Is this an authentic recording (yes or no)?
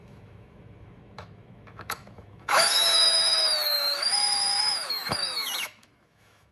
no